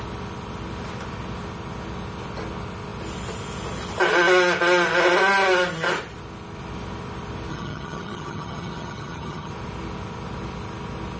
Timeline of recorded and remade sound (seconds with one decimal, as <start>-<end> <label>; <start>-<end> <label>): 0.0-7.5 recorded; 7.5-9.5 remade; 9.5-11.2 recorded